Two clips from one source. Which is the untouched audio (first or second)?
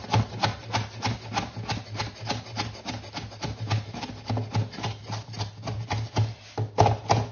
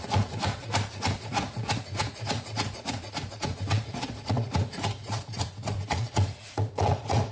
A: first